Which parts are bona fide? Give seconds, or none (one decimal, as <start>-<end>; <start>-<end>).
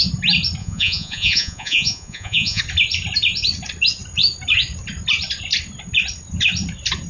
0.0-0.6; 2.6-7.1